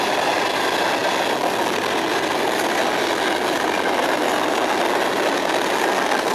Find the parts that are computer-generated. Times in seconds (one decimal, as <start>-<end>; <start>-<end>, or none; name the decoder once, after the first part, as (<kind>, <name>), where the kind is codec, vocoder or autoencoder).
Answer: none